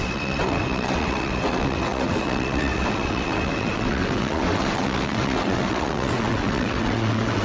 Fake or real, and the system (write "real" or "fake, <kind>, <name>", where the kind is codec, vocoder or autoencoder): fake, vocoder, WaveNeXt